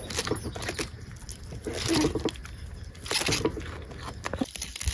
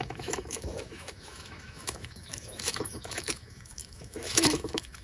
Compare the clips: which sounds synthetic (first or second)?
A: second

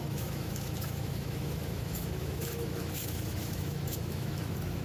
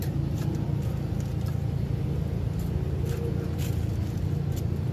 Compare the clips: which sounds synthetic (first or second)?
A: first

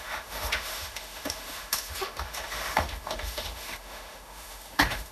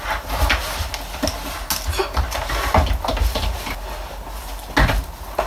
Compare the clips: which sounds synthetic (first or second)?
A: first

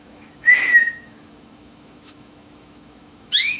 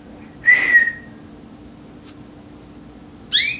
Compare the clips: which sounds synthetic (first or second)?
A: first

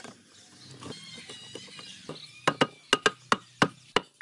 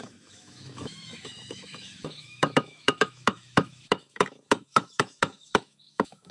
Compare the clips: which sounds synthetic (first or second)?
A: second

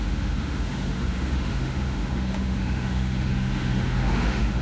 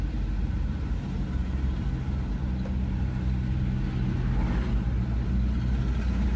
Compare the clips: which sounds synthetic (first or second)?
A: first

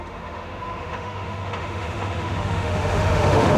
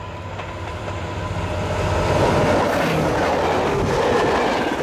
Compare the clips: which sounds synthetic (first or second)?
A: first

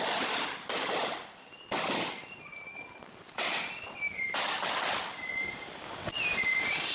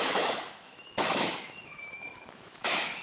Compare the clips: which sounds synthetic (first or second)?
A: second